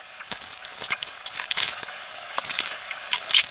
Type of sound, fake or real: fake